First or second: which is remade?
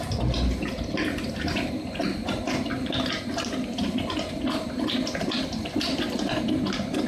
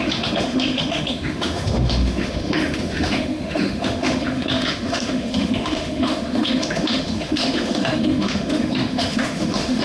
second